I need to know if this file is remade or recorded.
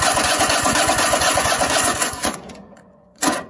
remade